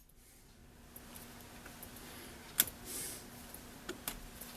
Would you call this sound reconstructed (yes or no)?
no